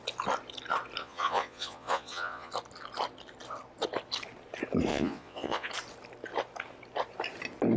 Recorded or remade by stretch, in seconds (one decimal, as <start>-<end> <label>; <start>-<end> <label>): 0.0-1.0 recorded; 1.0-2.5 remade; 2.5-4.9 recorded; 4.9-5.7 remade; 5.7-7.8 recorded